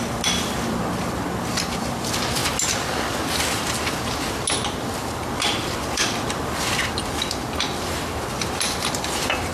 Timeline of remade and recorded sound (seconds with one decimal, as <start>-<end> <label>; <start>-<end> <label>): 0.0-2.4 remade; 2.4-4.3 recorded; 4.3-9.5 remade